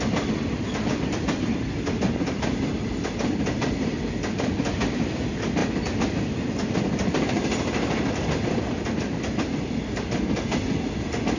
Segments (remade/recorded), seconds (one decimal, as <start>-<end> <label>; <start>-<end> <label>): 0.0-11.4 recorded